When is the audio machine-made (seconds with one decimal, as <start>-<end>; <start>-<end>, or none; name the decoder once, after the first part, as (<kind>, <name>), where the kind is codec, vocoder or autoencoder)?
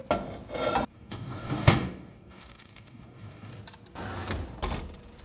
0.9-3.5 (codec, DAC)